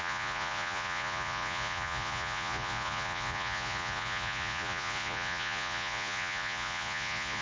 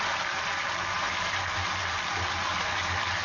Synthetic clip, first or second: first